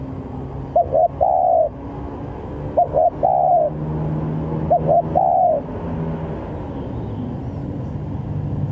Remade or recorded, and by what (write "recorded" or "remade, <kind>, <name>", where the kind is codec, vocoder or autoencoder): recorded